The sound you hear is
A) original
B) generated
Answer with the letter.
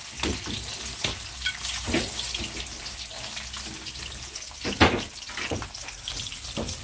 A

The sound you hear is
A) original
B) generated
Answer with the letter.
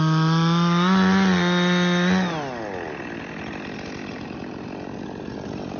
A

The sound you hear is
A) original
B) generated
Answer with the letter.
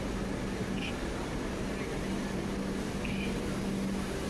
A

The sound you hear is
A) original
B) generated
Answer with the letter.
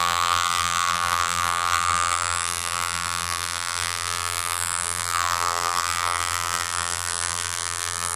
B